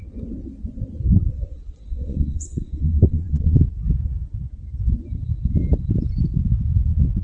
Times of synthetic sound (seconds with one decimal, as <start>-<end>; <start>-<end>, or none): 1.5-3.6